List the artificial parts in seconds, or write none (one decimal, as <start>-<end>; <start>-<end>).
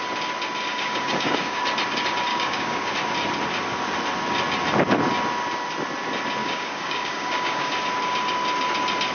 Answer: 0.7-1.6; 2.3-2.9; 6.4-7.7